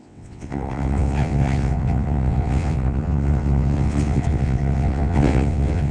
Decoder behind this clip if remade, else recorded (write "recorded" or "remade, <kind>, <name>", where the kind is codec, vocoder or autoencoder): remade, vocoder, WaveNeXt